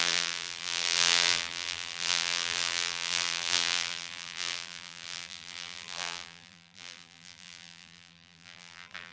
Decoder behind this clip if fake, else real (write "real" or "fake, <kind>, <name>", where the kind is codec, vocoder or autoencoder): fake, vocoder, BigVGAN v2